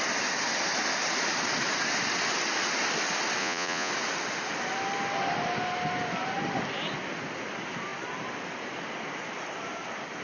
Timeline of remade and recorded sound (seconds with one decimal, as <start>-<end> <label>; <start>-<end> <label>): 0.0-3.4 recorded; 3.4-3.9 remade; 3.9-10.2 recorded